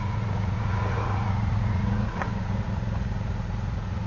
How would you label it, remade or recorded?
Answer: remade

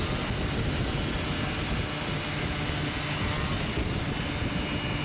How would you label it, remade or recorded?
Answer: recorded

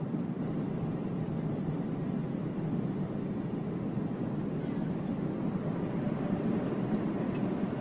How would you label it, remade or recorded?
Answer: recorded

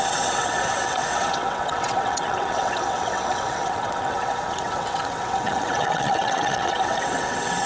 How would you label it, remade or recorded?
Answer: remade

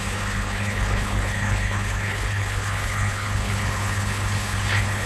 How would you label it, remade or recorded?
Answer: remade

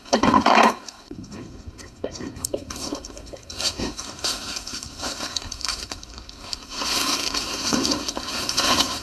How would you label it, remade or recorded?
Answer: remade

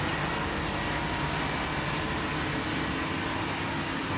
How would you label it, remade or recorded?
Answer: recorded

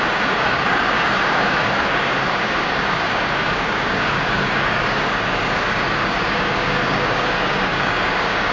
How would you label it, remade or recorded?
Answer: remade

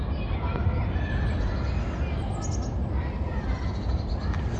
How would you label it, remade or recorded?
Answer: recorded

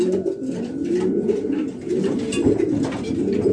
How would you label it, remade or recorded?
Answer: recorded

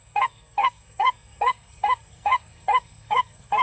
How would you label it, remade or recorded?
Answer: remade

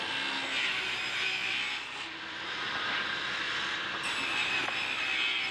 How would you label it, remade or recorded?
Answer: recorded